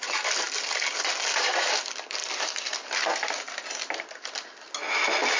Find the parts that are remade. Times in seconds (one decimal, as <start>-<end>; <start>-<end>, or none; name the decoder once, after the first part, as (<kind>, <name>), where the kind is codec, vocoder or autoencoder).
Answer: none